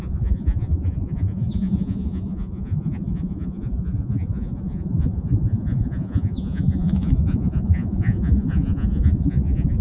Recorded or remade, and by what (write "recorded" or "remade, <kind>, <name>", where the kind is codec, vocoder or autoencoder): remade, vocoder, Vocos